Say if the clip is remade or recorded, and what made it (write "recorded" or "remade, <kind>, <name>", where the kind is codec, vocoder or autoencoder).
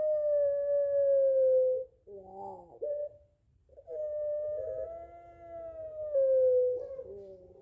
recorded